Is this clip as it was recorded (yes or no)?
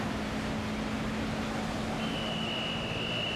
yes